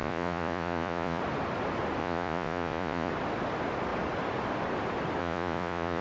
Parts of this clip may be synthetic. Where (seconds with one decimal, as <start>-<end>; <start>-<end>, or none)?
0.0-1.2; 2.0-3.1; 5.2-6.0